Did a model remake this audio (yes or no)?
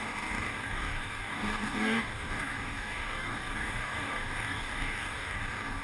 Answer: yes